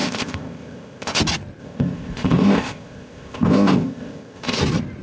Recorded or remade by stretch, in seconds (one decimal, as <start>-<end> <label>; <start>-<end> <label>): 0.0-1.2 remade; 1.2-1.6 recorded; 1.6-4.6 remade; 4.6-5.0 recorded